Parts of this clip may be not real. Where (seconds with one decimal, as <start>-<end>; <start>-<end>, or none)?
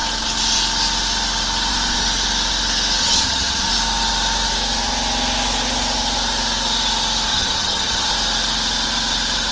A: 3.0-3.7; 7.3-8.1